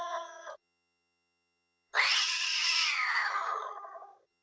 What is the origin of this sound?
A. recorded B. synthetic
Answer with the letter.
B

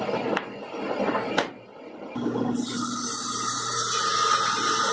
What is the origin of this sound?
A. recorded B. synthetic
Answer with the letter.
A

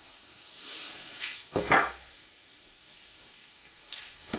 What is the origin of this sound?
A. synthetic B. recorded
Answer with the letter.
A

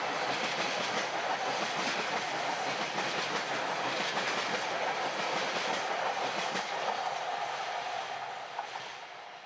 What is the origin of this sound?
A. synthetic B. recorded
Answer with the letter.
A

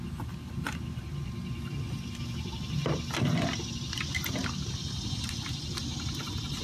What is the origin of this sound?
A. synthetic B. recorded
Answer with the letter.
B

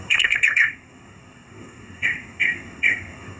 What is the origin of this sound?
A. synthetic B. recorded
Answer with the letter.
A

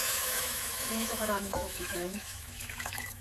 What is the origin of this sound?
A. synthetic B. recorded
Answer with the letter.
A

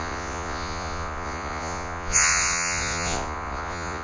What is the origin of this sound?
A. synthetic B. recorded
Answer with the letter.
A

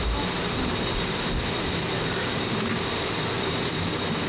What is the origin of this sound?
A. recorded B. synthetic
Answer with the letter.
A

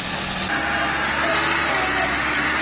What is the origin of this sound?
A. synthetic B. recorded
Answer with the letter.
B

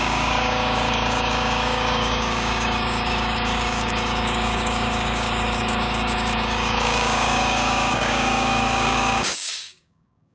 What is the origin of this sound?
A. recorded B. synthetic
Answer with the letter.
B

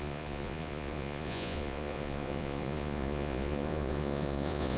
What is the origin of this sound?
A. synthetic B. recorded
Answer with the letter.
A